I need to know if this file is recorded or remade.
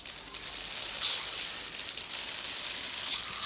recorded